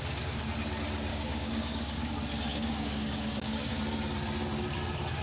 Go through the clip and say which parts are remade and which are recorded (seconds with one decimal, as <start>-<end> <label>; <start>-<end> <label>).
0.0-1.1 recorded; 1.1-2.1 remade; 2.1-2.5 recorded; 2.5-3.8 remade; 3.8-5.2 recorded